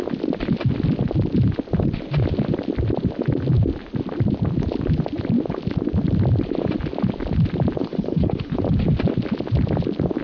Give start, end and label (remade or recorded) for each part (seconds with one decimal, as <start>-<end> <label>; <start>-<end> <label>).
0.0-7.8 recorded; 7.8-8.6 remade; 8.6-10.2 recorded